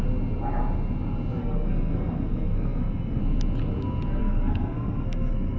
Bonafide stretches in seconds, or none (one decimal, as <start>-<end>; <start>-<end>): 0.0-1.4; 3.2-4.2